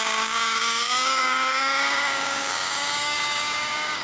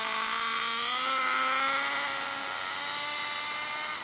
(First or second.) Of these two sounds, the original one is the second